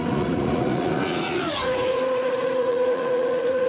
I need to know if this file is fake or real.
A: fake